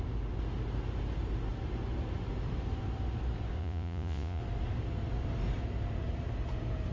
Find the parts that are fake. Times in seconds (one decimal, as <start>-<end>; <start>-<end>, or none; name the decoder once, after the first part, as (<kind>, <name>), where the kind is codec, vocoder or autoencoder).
3.6-4.4 (vocoder, Vocos)